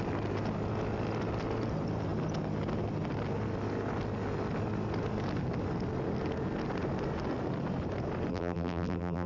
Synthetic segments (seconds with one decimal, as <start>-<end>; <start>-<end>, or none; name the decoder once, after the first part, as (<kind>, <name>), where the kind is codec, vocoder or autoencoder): 8.3-9.3 (vocoder, BigVGAN v2)